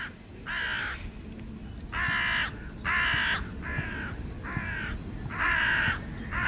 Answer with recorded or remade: recorded